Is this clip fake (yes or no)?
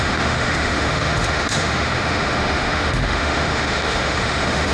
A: yes